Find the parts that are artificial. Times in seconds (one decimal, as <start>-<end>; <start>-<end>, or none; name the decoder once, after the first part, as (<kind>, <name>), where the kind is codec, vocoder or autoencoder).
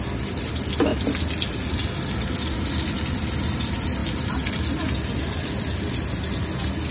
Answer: none